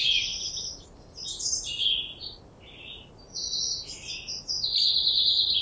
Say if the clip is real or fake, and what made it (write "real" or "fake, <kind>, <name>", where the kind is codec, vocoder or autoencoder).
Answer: real